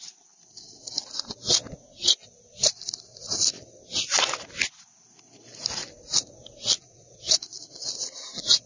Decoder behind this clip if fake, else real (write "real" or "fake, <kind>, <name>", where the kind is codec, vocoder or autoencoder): real